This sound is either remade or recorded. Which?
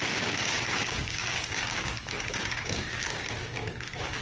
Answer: remade